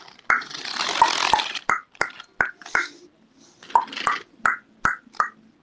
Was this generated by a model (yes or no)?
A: no